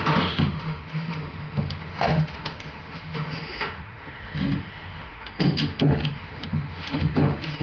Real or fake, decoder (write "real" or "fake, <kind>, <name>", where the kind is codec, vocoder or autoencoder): fake, autoencoder, DAC-VAE